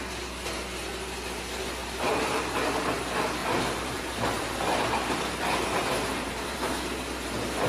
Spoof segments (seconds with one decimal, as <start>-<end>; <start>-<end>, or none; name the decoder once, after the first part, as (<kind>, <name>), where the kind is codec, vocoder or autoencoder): 1.8-2.4 (vocoder, BigVGAN v2); 3.4-6.8